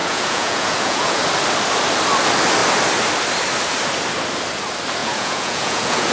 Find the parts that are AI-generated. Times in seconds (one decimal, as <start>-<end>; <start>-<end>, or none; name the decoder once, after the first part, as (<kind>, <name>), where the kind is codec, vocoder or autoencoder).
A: 0.0-1.2 (vocoder, Vocos); 5.0-6.1